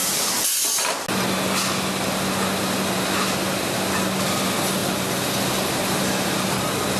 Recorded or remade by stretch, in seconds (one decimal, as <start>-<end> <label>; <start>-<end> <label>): 0.0-7.0 recorded